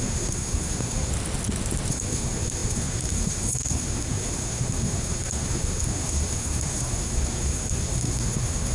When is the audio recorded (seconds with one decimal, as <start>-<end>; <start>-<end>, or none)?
1.1-1.9